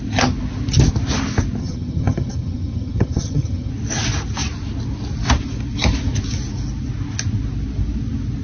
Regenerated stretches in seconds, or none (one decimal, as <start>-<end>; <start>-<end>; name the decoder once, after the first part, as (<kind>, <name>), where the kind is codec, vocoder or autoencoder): 1.6-3.7 (vocoder, HiFi-GAN)